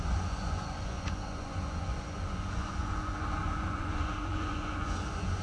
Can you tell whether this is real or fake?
fake